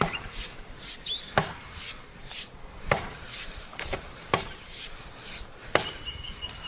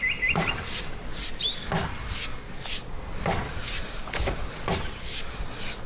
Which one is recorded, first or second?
second